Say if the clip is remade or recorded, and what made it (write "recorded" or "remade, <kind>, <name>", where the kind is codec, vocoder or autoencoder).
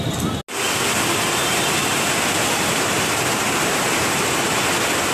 recorded